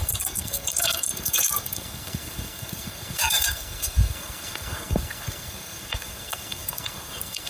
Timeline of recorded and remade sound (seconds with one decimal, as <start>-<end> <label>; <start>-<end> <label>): 0.0-7.5 remade